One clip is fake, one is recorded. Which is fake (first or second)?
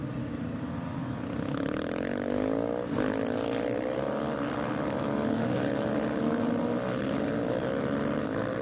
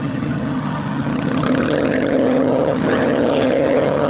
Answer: second